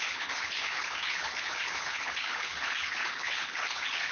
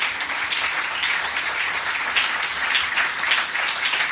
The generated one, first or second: first